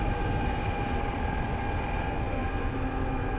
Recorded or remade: recorded